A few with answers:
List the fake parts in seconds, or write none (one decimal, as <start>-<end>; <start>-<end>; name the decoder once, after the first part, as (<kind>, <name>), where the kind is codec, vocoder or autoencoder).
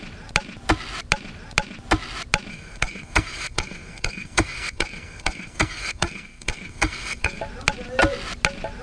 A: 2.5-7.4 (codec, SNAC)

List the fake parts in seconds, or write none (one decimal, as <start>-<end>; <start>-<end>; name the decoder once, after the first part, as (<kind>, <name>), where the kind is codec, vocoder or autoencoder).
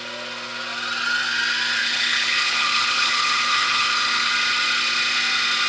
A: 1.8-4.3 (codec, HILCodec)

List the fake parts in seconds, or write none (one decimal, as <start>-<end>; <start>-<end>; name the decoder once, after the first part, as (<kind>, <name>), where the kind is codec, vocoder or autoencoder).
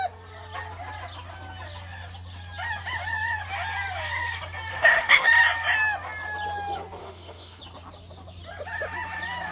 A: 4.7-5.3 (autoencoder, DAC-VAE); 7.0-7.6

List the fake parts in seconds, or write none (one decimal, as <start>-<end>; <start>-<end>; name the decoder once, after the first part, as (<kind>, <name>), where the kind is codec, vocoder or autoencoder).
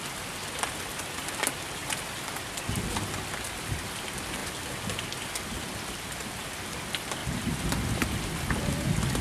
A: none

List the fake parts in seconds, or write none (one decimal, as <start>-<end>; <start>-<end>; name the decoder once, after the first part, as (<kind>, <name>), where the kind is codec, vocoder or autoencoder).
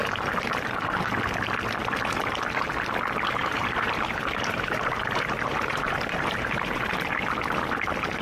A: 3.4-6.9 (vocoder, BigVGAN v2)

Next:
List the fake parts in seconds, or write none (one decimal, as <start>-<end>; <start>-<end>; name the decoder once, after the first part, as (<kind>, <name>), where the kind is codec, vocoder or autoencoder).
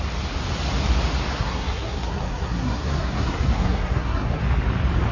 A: 1.3-4.4 (codec, SNAC)